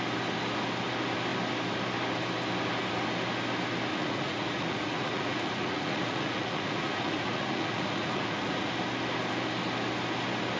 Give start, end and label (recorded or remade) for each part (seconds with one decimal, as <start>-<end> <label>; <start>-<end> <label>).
0.0-3.9 recorded; 3.9-8.7 remade; 8.7-10.6 recorded